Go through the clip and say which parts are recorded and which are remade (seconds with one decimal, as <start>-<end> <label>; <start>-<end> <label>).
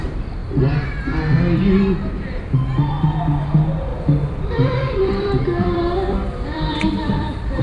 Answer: 0.0-3.9 recorded; 3.9-7.6 remade